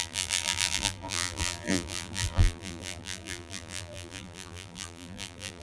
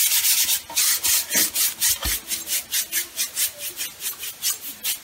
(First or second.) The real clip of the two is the second